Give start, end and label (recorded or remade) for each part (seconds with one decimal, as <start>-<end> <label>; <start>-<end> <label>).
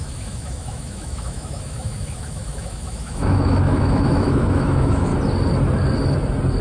0.0-5.1 remade; 5.1-6.6 recorded